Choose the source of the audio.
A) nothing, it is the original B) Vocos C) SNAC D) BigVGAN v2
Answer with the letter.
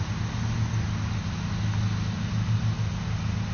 A